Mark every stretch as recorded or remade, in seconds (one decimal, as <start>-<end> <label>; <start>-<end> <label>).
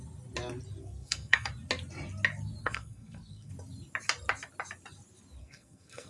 0.0-0.8 recorded; 0.8-1.5 remade; 1.5-2.6 recorded; 2.6-3.5 remade; 3.5-5.4 recorded; 5.4-6.1 remade